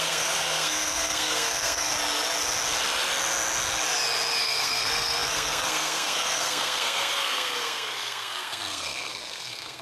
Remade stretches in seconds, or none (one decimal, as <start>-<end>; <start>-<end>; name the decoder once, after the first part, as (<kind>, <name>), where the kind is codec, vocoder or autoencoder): 0.0-1.9 (codec, SNAC); 4.4-9.8